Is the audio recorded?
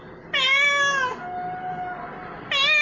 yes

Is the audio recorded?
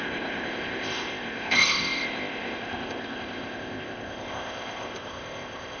no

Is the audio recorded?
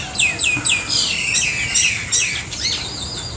yes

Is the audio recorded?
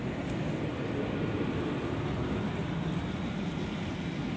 yes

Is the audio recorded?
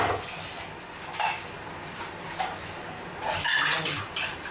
yes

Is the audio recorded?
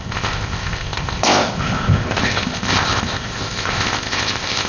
no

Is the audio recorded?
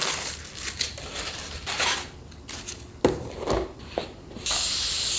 yes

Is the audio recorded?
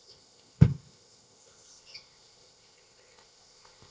no